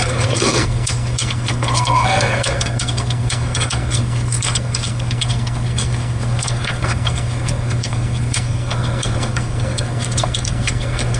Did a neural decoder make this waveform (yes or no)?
yes